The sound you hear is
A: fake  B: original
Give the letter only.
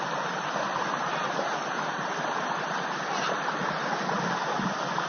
B